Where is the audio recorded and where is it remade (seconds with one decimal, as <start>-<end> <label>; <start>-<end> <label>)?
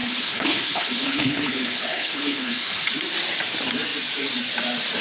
0.0-2.9 remade; 2.9-5.0 recorded